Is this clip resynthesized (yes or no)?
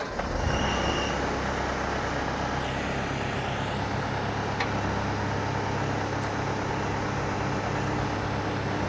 no